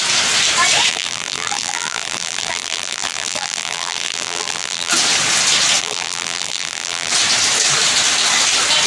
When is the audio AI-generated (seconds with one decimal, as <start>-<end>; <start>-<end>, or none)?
0.9-4.9; 5.8-7.1

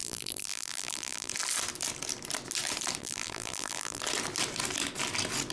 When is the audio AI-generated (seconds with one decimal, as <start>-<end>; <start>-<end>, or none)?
0.0-1.3; 3.0-4.0

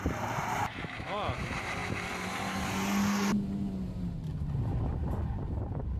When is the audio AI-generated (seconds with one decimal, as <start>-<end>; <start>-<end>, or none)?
0.0-1.8; 5.4-6.0

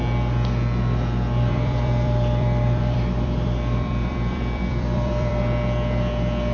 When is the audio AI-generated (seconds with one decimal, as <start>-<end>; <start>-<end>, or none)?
1.5-5.4